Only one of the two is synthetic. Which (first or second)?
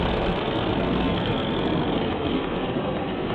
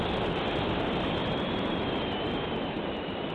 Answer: first